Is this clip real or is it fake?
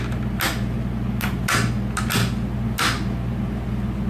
real